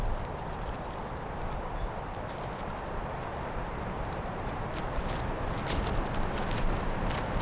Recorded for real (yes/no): no